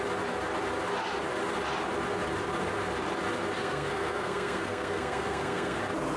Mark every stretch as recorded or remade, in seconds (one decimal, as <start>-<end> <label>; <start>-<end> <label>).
0.0-3.6 recorded; 3.6-5.8 remade; 5.8-6.2 recorded